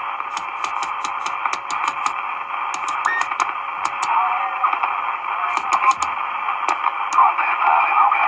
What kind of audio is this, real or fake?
real